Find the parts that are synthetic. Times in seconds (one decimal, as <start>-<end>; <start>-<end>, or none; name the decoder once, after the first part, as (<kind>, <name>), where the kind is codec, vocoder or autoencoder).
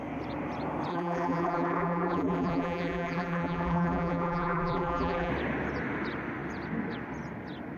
0.9-5.3 (vocoder, BigVGAN v2)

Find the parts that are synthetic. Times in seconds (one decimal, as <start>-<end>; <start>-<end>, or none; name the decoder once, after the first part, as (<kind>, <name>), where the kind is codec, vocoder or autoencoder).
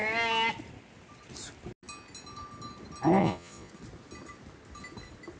3.2-3.7 (vocoder, Vocos)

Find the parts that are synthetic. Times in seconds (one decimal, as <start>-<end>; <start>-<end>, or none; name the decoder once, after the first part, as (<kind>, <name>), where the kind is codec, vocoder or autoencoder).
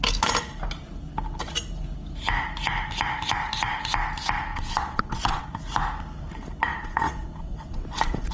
4.5-5.4 (vocoder, WaveNeXt); 6.7-8.3